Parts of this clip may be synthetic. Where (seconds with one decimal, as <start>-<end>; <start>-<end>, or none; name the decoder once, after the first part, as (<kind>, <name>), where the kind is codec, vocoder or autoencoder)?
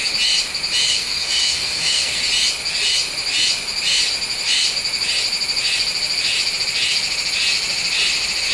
0.9-2.2 (codec, SNAC)